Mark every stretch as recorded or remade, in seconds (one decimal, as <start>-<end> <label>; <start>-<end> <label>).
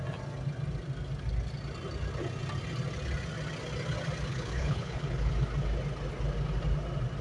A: 0.0-4.3 recorded; 4.3-5.3 remade; 5.3-7.2 recorded